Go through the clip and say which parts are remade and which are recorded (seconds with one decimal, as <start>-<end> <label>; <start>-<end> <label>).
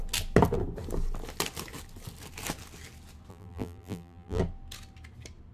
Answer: 0.0-3.3 recorded; 3.3-4.4 remade; 4.4-5.5 recorded